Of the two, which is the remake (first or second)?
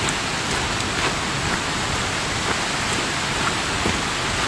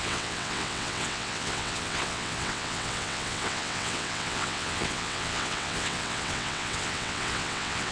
second